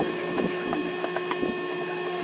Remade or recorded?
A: remade